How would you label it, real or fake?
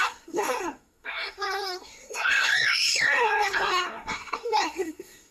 fake